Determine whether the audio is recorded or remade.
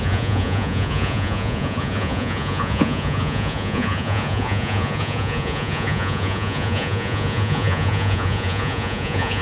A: remade